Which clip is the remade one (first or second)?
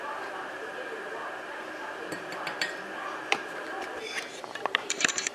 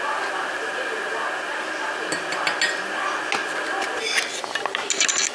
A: first